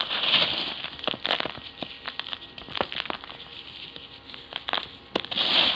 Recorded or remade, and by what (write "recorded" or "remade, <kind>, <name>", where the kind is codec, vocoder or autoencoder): recorded